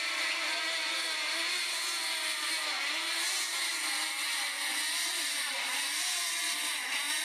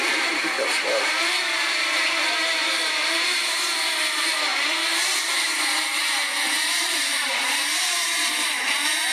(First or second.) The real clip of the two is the first